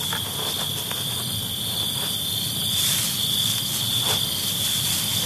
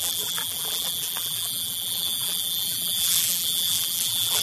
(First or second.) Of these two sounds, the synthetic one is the second